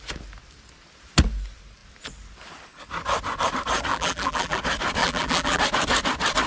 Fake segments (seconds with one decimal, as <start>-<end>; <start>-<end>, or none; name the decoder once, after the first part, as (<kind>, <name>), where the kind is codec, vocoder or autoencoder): 3.9-4.6 (vocoder, BigVGAN v2); 5.0-5.6